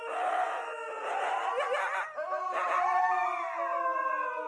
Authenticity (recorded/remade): recorded